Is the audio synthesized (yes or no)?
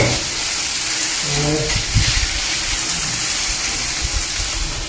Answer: no